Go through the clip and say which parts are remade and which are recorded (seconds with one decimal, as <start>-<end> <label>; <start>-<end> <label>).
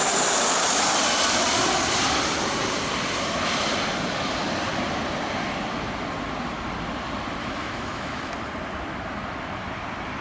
0.0-7.4 recorded; 7.4-8.3 remade; 8.3-10.2 recorded